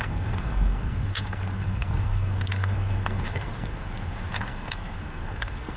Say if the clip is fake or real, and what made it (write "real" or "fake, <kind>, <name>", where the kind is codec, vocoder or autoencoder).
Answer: fake, codec, SNAC